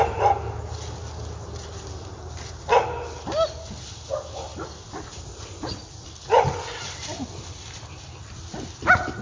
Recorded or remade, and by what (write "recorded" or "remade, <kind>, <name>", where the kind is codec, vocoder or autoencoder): recorded